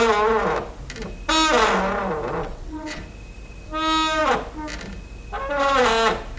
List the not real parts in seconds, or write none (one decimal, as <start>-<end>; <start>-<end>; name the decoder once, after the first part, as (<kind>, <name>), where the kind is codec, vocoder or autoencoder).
2.4-3.0 (vocoder, WaveNeXt)